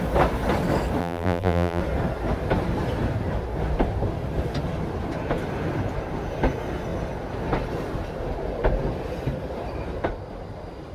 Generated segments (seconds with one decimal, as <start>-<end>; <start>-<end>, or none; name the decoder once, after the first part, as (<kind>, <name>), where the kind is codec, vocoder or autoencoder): 1.0-1.8 (vocoder, BigVGAN v2)